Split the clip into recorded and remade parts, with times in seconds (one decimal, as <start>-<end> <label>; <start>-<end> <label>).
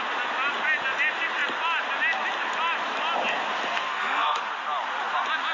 0.0-3.7 recorded; 3.7-4.5 remade; 4.5-5.5 recorded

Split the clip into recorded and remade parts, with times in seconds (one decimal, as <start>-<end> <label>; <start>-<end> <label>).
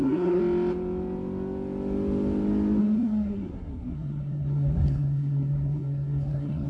0.0-0.4 remade; 0.4-2.8 recorded; 2.8-6.7 remade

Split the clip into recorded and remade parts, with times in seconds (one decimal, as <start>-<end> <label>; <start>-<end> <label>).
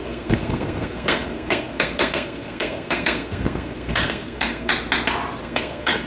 0.0-4.7 remade; 4.7-5.4 recorded; 5.4-6.1 remade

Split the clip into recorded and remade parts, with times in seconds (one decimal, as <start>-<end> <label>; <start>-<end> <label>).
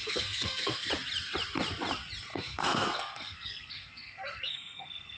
0.0-0.9 remade; 0.9-2.3 recorded; 2.3-5.2 remade